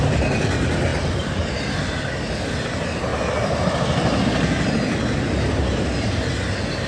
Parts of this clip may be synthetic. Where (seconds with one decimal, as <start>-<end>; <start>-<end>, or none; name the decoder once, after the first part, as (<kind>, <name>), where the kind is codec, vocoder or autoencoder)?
none